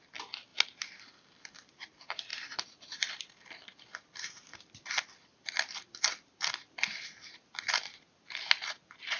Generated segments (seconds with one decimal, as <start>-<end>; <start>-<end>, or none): 0.0-0.5; 1.9-9.2

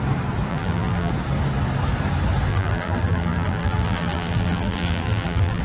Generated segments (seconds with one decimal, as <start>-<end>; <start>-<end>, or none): 0.5-1.1; 2.5-5.6

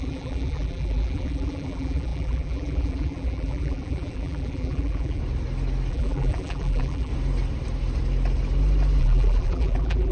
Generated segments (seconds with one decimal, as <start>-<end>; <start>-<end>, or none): 0.0-5.2; 5.9-7.1; 9.0-10.1